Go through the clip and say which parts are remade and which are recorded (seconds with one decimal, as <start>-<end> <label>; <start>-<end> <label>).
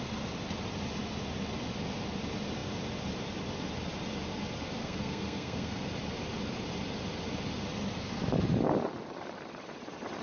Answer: 0.0-4.8 recorded; 4.8-5.9 remade; 5.9-10.2 recorded